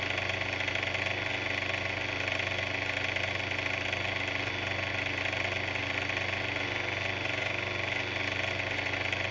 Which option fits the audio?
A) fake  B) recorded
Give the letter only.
B